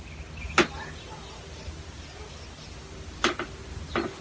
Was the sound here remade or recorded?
recorded